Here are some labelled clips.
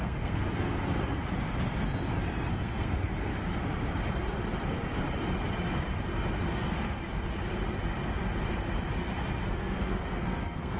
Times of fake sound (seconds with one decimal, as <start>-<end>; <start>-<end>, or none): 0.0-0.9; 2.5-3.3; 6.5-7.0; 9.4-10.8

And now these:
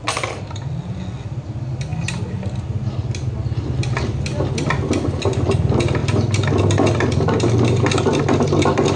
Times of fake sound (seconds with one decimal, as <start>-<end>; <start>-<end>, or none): none

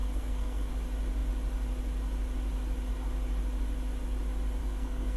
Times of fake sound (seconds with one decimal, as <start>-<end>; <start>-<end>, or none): 0.0-0.7; 4.6-5.2